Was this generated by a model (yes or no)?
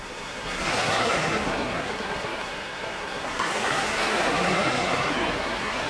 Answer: yes